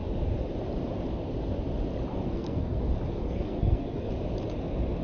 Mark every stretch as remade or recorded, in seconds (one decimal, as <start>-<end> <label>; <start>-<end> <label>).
0.0-2.1 recorded; 2.1-2.8 remade; 2.8-3.2 recorded; 3.2-4.1 remade; 4.1-5.0 recorded